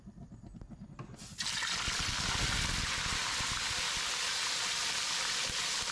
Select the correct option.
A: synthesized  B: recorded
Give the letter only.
B